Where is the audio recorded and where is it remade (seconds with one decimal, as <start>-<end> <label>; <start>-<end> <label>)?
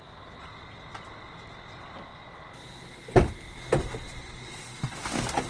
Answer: 0.0-4.2 recorded; 4.2-4.8 remade; 4.8-5.5 recorded